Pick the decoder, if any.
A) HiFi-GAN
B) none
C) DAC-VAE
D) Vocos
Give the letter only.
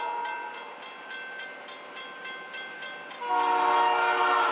B